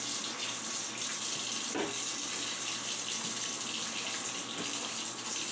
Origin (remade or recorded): recorded